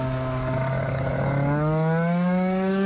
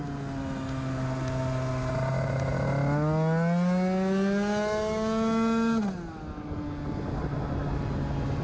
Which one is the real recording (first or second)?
second